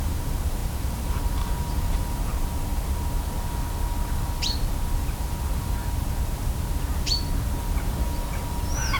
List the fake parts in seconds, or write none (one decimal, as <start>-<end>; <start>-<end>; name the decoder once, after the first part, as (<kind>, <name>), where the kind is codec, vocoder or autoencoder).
0.0-2.7 (vocoder, BigVGAN v2); 7.6-9.0